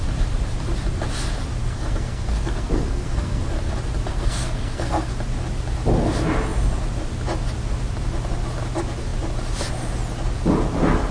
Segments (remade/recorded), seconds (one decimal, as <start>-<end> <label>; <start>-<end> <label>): 0.0-1.6 recorded; 1.6-3.4 remade; 3.4-4.1 recorded; 4.1-5.1 remade; 5.1-11.1 recorded